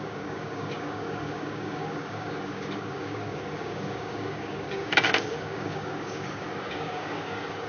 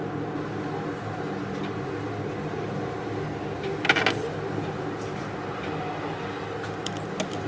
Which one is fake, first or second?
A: first